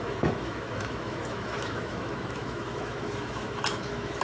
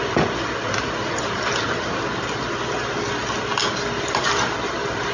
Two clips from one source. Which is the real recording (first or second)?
second